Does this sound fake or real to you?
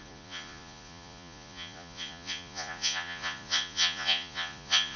fake